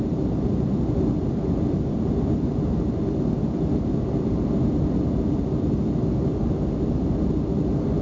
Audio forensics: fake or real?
real